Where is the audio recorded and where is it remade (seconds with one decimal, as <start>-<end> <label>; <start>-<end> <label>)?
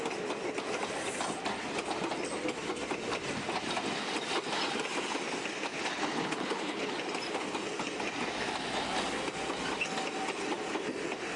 0.0-5.7 recorded; 5.7-6.9 remade; 6.9-11.4 recorded